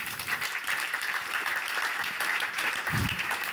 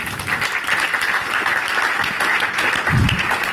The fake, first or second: first